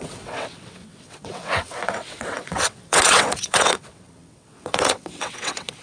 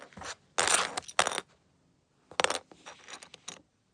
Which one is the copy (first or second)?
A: first